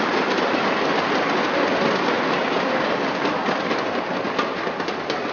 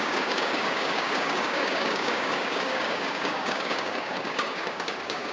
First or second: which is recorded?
first